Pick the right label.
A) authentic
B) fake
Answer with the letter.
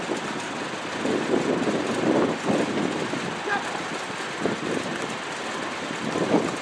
A